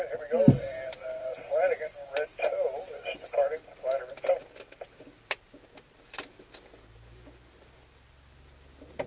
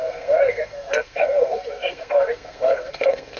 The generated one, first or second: second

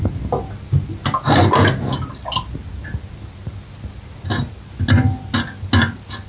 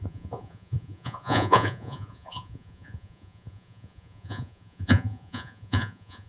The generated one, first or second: second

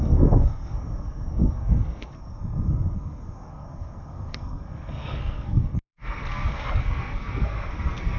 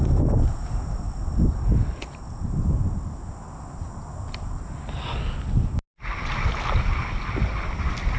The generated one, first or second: first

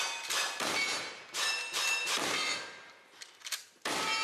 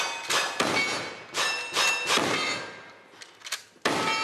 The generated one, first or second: first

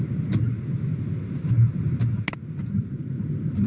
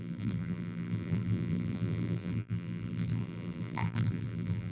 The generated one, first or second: second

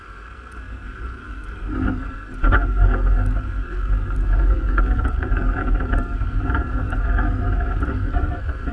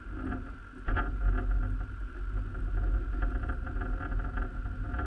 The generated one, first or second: first